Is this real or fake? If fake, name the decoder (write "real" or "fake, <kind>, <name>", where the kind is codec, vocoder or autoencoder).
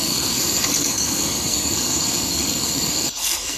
fake, codec, SNAC